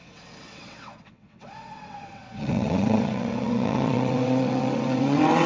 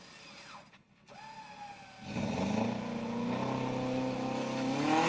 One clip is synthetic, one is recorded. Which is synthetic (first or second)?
first